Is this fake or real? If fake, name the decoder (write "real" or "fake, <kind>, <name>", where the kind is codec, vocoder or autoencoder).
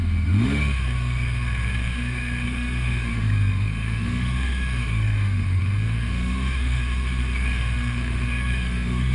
fake, autoencoder, DAC-VAE